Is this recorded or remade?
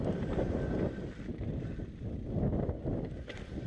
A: recorded